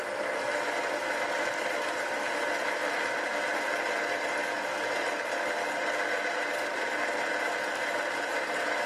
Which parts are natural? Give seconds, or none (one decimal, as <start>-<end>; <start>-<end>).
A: 2.8-7.4